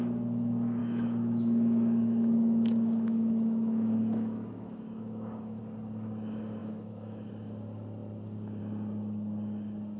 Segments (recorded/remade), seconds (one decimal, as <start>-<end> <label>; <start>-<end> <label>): 0.0-0.8 recorded; 0.8-5.6 remade; 5.6-6.6 recorded; 6.6-7.3 remade; 7.3-10.0 recorded